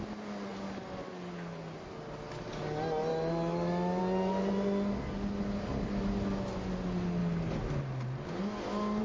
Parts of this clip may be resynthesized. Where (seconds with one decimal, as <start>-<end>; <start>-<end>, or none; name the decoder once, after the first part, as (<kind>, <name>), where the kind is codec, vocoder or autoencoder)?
3.1-4.0 (autoencoder, DAC-VAE)